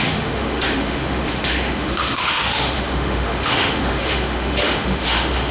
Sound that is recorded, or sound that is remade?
remade